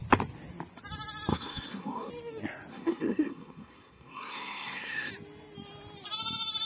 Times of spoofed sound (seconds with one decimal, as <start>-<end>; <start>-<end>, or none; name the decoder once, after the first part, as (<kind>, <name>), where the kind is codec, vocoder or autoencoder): 1.3-2.1 (codec, SNAC); 2.7-5.1